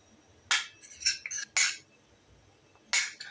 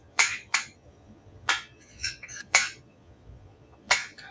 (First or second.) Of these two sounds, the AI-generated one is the second